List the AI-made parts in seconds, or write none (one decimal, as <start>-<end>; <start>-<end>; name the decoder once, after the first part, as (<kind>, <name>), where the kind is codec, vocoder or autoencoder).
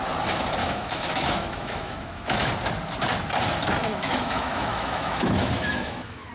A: 0.6-2.5 (autoencoder, DAC-VAE); 3.8-6.3